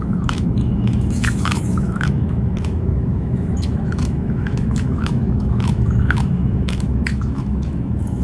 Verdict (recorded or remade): remade